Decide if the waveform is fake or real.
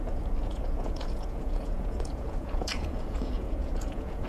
fake